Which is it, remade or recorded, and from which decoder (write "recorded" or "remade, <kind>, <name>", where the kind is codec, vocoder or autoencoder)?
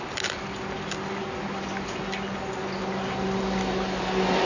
recorded